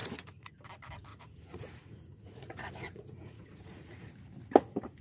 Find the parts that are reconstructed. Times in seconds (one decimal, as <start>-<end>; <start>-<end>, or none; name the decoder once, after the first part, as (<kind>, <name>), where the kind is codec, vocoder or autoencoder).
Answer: 0.0-0.5 (vocoder, Vocos); 1.1-4.1